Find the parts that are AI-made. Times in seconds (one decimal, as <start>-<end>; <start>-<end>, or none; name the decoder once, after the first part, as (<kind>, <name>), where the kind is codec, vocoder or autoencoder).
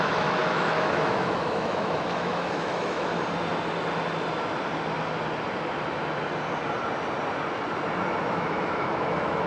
0.0-3.1 (autoencoder, DAC-VAE); 8.3-9.5